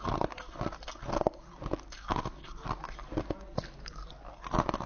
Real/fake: real